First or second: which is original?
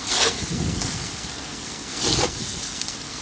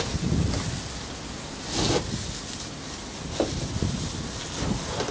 second